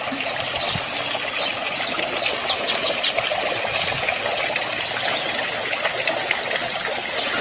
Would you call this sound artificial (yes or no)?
no